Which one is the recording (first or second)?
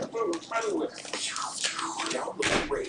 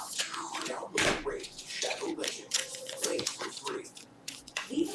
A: first